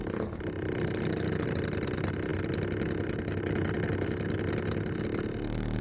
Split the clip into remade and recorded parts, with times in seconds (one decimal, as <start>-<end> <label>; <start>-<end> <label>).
0.0-5.8 recorded